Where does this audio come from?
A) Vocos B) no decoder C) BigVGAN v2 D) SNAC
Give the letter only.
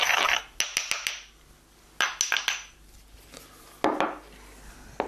B